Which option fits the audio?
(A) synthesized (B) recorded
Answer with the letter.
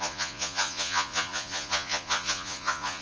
A